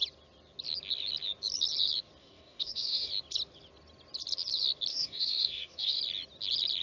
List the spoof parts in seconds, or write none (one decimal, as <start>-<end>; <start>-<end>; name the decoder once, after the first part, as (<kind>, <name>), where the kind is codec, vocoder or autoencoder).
2.2-3.1 (codec, DAC); 4.9-6.0